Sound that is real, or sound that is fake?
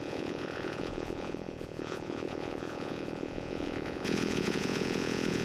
fake